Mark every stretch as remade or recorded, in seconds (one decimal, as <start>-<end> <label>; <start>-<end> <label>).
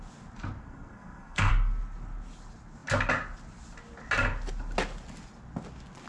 0.0-0.6 recorded; 0.6-1.5 remade; 1.5-6.1 recorded